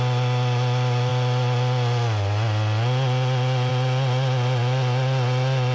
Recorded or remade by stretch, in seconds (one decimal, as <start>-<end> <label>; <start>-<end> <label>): 0.0-5.7 recorded